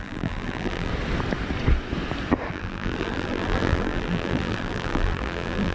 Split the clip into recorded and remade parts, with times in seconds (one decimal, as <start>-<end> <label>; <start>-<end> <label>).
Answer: 0.0-0.9 remade; 0.9-2.5 recorded; 2.5-5.7 remade